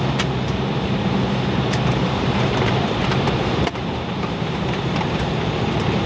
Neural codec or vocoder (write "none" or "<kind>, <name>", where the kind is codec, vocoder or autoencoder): vocoder, BigVGAN v2